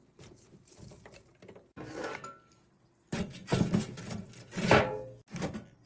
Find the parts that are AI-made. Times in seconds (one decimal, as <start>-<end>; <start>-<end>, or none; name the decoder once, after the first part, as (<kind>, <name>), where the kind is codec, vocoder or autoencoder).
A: none